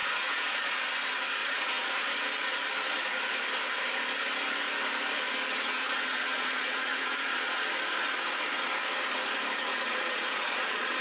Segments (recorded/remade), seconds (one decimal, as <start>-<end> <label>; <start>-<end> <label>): 0.0-0.8 remade; 0.8-1.4 recorded; 1.4-2.2 remade; 2.2-5.7 recorded; 5.7-7.7 remade; 7.7-9.7 recorded; 9.7-11.0 remade